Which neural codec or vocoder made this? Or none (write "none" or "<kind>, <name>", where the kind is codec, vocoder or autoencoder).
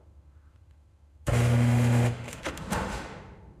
autoencoder, DAC-VAE